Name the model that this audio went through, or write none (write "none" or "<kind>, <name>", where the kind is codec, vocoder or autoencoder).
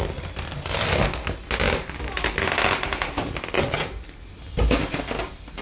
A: none